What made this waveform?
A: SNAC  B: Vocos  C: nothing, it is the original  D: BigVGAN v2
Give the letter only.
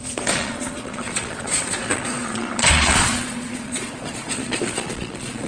B